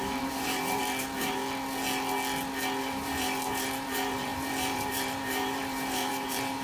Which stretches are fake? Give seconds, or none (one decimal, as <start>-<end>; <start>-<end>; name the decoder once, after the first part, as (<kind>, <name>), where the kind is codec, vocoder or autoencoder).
0.0-1.4 (vocoder, BigVGAN v2); 2.8-6.6